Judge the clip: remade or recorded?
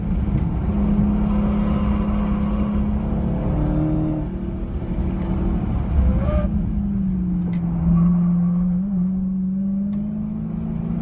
recorded